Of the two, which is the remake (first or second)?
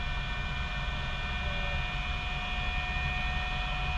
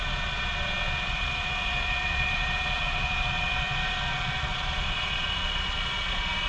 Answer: second